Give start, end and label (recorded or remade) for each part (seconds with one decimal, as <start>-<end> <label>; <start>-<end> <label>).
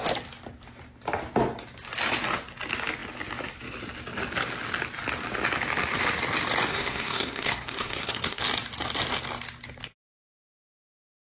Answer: 0.0-6.7 recorded; 6.7-8.4 remade; 8.4-11.4 recorded